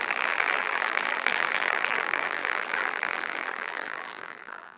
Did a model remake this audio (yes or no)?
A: yes